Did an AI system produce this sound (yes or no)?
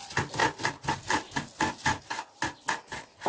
no